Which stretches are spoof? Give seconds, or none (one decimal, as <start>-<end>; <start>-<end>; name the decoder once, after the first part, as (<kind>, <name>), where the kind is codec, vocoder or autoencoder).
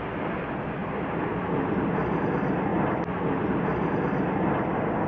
none